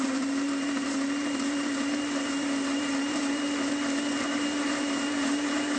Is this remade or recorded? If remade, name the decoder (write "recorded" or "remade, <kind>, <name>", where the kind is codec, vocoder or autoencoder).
remade, vocoder, BigVGAN v2